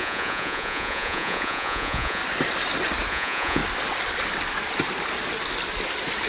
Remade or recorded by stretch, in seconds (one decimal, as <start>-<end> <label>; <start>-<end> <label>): 0.0-2.2 remade; 2.2-3.1 recorded; 3.1-3.6 remade; 3.6-6.3 recorded